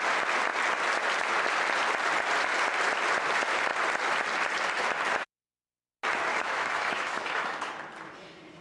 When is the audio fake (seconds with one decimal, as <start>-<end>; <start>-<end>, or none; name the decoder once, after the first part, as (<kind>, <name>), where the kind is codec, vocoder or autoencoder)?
6.3-7.7 (autoencoder, DAC-VAE)